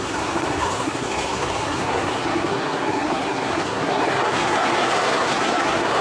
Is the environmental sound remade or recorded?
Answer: remade